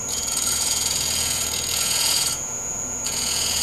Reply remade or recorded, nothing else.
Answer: remade